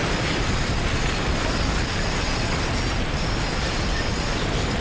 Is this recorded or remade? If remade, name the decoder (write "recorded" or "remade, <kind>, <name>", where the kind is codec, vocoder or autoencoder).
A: recorded